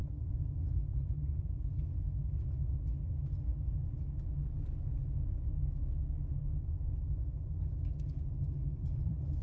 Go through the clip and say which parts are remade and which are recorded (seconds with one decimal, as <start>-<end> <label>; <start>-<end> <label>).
0.0-8.8 recorded; 8.8-9.4 remade

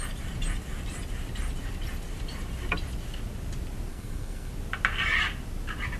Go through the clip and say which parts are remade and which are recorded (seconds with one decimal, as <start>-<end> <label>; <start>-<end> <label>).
0.0-3.9 recorded; 3.9-4.5 remade; 4.5-6.0 recorded

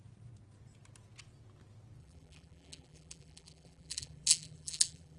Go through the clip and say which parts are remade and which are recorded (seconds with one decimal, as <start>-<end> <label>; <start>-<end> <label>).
0.0-2.0 recorded; 2.0-5.2 remade

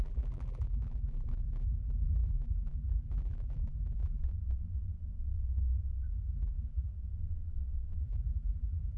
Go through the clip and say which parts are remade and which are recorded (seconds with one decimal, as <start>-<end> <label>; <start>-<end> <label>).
0.0-4.2 remade; 4.2-6.1 recorded; 6.1-6.9 remade; 6.9-8.0 recorded; 8.0-9.0 remade

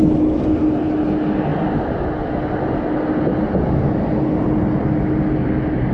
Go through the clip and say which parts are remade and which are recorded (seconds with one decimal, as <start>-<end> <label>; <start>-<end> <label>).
0.0-5.9 recorded

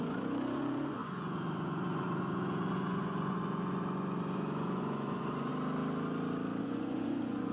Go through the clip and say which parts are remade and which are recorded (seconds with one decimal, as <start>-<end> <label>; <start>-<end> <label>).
0.0-5.5 remade; 5.5-6.6 recorded; 6.6-7.5 remade

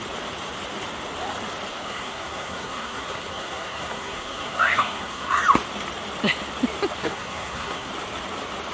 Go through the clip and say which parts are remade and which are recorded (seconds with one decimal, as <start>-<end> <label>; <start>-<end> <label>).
0.0-1.7 recorded; 1.7-5.4 remade; 5.4-7.0 recorded; 7.0-7.9 remade; 7.9-8.7 recorded